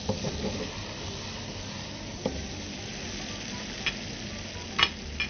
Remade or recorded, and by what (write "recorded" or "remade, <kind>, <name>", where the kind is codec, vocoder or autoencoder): recorded